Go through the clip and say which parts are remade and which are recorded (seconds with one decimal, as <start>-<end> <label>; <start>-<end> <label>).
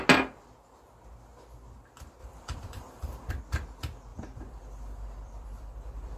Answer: 0.0-2.2 recorded; 2.2-3.3 remade; 3.3-4.1 recorded; 4.1-6.2 remade